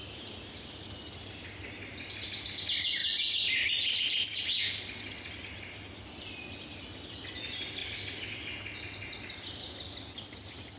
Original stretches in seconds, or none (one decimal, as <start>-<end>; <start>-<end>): 0.0-10.8